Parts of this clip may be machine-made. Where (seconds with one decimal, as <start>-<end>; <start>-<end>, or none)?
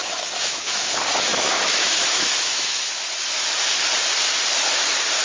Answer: 0.0-0.9; 1.3-2.9